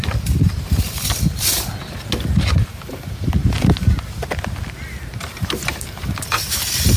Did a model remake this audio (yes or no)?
no